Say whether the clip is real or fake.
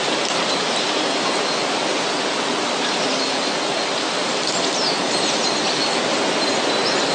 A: real